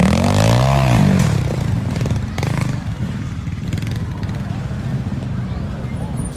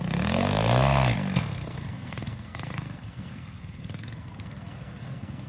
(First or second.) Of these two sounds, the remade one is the second